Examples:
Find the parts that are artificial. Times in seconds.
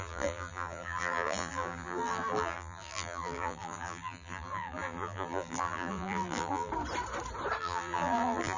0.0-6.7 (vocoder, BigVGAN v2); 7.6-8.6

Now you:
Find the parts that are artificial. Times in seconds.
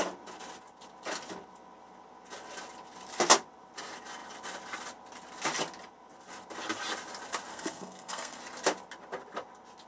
7.5-8.4 (codec, SNAC)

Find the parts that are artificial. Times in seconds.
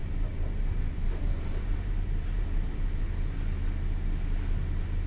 0.0-3.1 (vocoder, BigVGAN v2)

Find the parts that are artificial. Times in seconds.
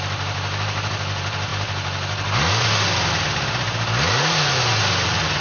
none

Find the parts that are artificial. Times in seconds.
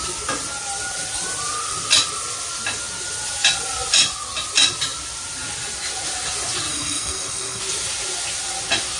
6.7-7.6 (codec, SNAC)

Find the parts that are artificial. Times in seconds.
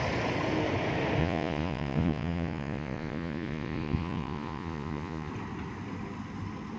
1.2-5.3 (vocoder, Vocos)